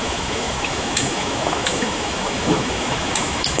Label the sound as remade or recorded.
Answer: remade